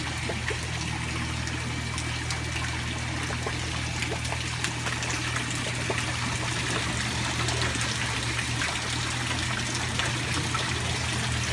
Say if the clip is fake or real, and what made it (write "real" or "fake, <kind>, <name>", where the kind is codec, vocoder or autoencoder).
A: real